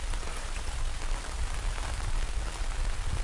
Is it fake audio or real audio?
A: real